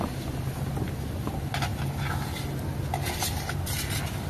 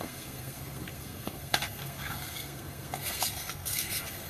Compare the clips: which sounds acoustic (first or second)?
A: first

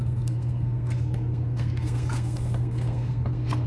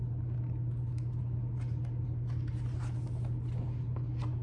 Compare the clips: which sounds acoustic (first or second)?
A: second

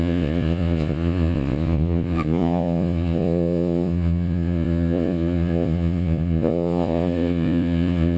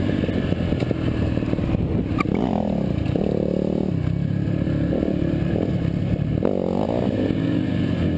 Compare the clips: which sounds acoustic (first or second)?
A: second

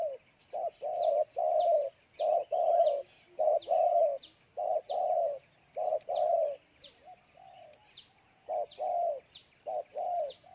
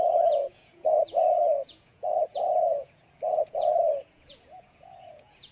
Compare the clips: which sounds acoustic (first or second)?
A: first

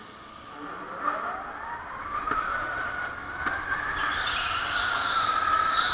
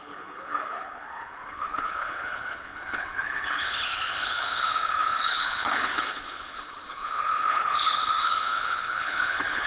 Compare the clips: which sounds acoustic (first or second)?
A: first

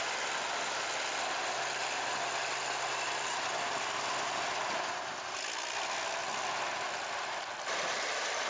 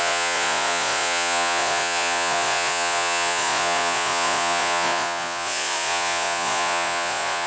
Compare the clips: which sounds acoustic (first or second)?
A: first